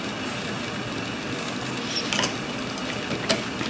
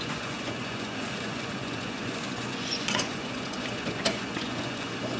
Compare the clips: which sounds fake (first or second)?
second